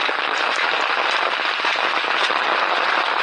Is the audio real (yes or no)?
yes